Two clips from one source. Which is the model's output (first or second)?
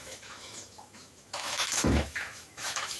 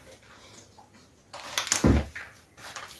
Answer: first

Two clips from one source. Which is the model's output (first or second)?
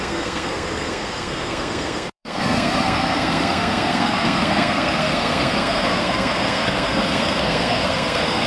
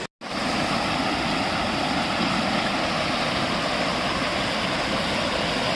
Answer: first